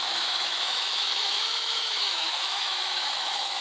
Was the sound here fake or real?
fake